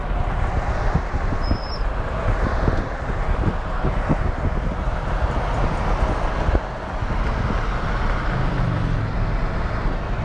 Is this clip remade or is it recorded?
recorded